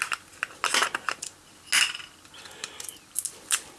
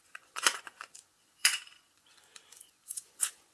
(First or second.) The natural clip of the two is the first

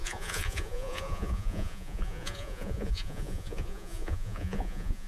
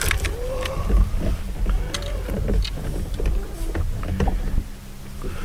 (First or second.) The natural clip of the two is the second